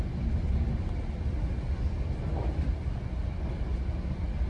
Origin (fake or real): real